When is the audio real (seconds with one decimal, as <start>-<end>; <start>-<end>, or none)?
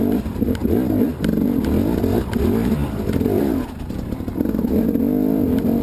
0.0-5.8